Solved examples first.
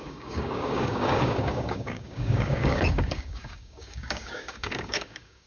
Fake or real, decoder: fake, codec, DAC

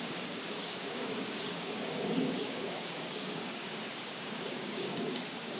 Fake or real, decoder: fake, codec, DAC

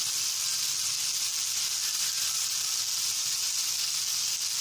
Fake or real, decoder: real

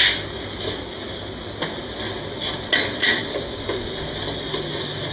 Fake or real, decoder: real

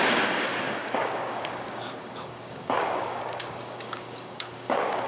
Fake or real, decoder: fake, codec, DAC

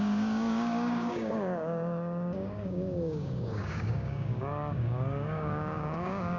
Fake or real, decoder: fake, codec, DAC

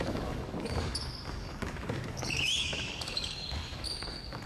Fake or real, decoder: fake, codec, DAC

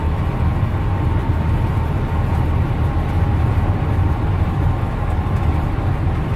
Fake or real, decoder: real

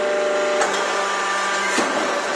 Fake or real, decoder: real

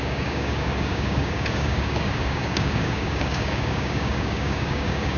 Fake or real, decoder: fake, codec, DAC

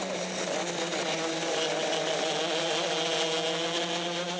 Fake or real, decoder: real